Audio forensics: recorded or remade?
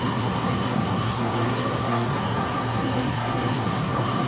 remade